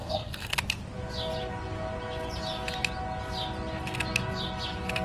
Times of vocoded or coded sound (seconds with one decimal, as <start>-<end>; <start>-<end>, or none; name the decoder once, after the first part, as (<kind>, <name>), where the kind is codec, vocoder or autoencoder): 0.0-0.6 (codec, SNAC)